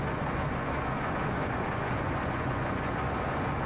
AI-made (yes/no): yes